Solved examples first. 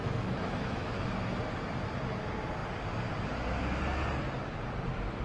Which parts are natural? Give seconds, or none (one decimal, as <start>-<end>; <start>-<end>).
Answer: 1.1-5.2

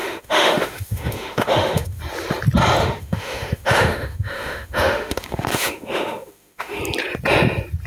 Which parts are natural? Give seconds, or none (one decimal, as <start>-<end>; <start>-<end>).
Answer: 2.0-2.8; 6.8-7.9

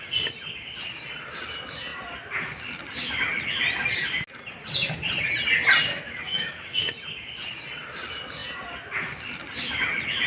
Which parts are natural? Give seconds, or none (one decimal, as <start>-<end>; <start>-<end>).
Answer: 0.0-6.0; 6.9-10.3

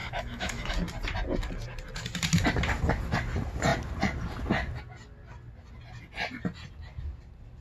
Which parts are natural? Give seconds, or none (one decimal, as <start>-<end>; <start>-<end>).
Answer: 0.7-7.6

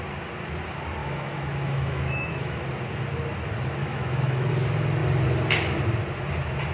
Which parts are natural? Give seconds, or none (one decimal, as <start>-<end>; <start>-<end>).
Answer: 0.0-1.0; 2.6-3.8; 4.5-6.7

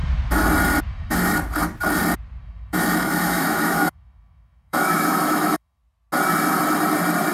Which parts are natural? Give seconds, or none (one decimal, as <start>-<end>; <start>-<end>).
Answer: 0.0-0.9; 1.3-2.4; 5.8-7.3

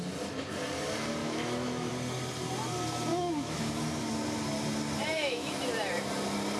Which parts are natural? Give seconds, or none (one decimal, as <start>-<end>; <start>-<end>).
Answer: 0.0-1.2; 1.9-3.1; 3.7-5.1; 5.6-6.6